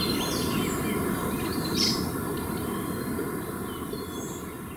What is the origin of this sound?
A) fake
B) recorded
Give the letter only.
B